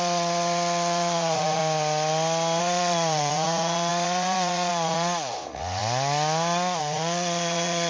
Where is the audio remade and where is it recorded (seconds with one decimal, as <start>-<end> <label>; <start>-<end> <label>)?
0.0-1.6 remade; 1.6-2.6 recorded; 2.6-5.8 remade; 5.8-6.8 recorded; 6.8-7.9 remade